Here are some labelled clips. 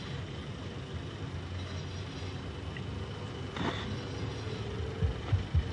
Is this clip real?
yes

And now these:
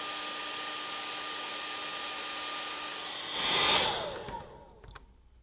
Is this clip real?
yes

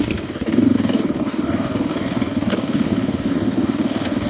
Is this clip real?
no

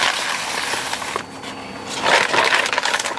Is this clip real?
yes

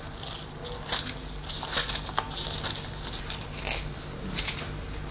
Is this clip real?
yes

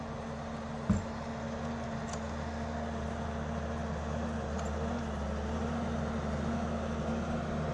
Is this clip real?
yes